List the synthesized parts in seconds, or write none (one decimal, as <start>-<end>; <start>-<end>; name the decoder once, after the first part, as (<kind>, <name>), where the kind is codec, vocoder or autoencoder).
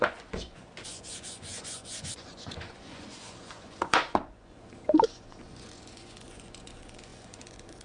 0.0-7.8 (vocoder, Vocos)